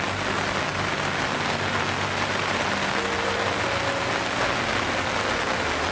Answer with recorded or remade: recorded